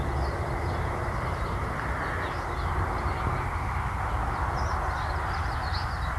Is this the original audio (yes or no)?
yes